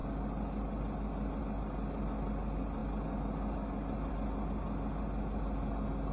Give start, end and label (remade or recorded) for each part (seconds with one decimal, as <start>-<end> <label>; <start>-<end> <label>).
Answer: 0.0-6.1 recorded